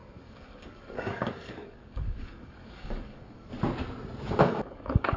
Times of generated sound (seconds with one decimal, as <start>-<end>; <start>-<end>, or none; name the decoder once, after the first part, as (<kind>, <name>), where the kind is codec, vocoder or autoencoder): 0.0-3.5 (codec, DAC); 4.4-5.2